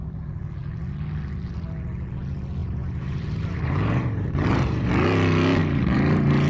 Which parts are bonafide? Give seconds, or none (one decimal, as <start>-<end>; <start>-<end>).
0.0-2.6; 4.9-5.6